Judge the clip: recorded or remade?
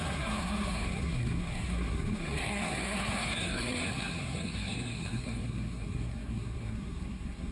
remade